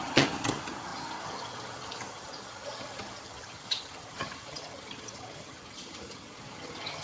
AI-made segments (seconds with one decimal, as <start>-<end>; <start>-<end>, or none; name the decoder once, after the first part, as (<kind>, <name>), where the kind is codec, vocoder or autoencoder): 0.0-7.0 (vocoder, HiFi-GAN)